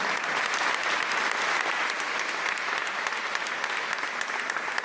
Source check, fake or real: real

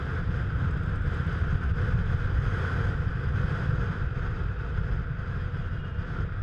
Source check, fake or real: real